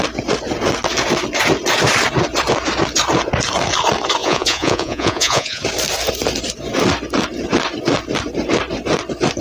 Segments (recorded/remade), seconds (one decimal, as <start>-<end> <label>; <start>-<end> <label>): 0.0-4.2 recorded; 4.2-5.6 remade; 5.6-9.4 recorded